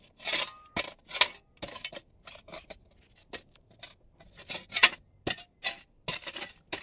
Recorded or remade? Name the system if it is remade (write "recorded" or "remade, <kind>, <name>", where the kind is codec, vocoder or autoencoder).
recorded